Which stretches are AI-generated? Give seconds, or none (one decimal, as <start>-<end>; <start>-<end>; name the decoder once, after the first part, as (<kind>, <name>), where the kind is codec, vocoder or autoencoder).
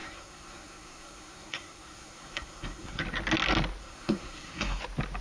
0.0-3.0 (codec, SNAC); 3.8-4.8